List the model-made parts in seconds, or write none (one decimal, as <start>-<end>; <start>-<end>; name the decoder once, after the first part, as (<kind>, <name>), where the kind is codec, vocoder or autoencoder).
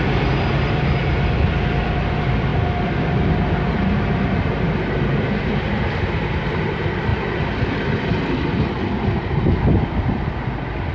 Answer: 0.0-2.5 (vocoder, BigVGAN v2); 5.4-7.1; 8.8-10.9